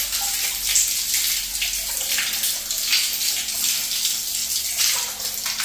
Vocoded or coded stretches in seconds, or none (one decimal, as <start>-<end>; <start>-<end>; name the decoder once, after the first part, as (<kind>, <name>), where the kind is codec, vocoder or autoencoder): none